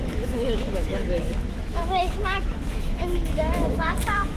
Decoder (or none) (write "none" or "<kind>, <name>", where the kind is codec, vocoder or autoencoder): autoencoder, DAC-VAE